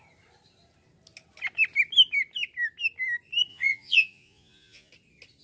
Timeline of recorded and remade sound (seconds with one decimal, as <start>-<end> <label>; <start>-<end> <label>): 0.0-3.5 recorded; 3.5-4.9 remade; 4.9-5.4 recorded